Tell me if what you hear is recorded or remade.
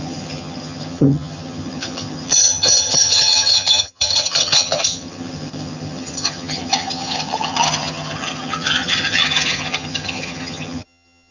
remade